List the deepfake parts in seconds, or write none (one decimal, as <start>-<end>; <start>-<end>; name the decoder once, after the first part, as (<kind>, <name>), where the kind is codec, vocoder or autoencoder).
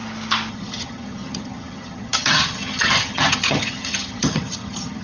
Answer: 0.5-5.0 (vocoder, HiFi-GAN)